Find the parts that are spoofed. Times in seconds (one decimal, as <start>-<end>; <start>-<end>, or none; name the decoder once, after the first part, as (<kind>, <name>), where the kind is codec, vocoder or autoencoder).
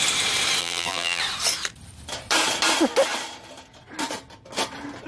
0.6-1.2 (vocoder, BigVGAN v2)